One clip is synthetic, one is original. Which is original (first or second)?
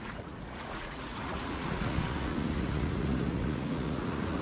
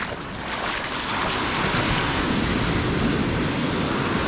second